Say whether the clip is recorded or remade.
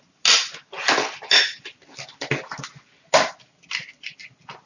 recorded